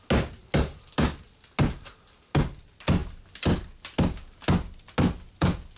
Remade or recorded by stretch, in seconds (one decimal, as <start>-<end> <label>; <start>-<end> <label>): 0.0-5.8 recorded